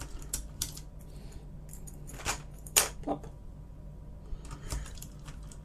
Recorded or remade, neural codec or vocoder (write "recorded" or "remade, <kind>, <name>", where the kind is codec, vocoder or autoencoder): remade, vocoder, BigVGAN v2